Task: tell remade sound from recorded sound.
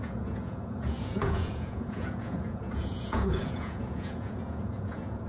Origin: remade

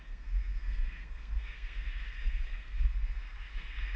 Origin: remade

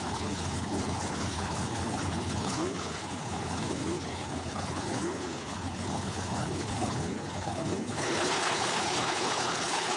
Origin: remade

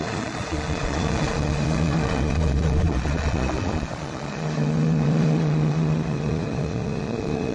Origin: remade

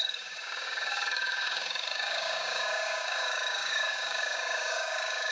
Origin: remade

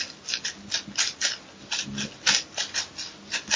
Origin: recorded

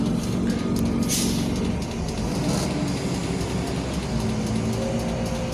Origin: recorded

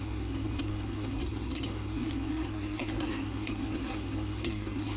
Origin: remade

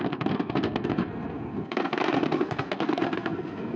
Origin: remade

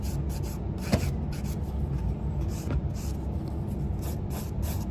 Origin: recorded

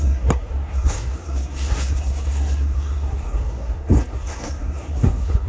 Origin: remade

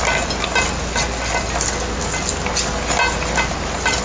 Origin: recorded